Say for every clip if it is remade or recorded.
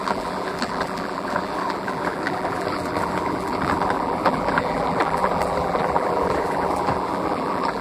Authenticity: remade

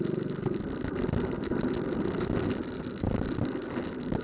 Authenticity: recorded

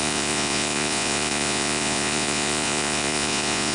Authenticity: remade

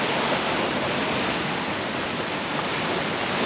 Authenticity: recorded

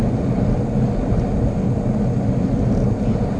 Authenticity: recorded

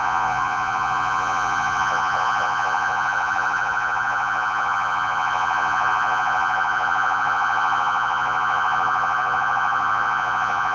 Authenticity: remade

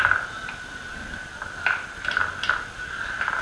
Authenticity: recorded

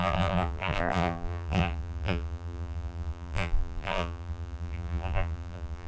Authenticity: remade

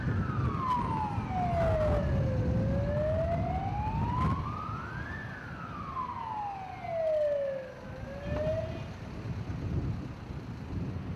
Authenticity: recorded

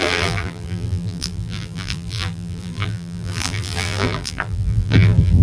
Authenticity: remade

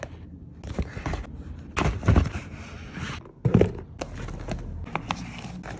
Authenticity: recorded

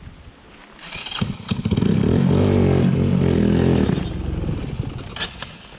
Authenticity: recorded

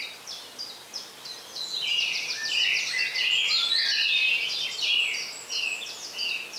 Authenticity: recorded